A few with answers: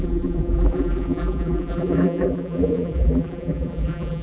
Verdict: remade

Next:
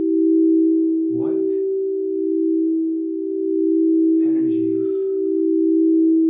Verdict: recorded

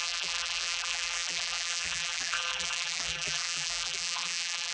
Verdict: remade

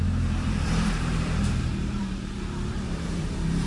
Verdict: remade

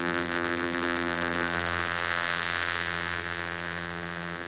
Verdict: remade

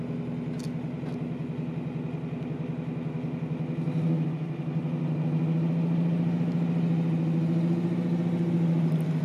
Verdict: recorded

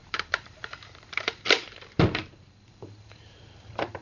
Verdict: remade